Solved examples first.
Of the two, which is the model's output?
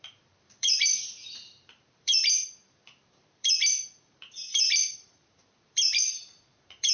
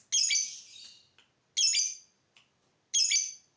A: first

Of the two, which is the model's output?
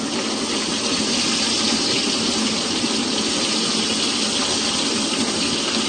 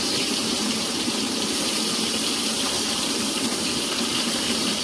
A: second